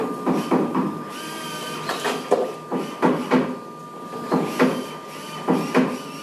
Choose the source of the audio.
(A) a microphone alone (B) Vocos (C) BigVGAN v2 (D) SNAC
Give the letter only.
A